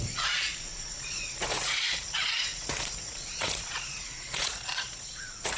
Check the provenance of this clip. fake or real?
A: fake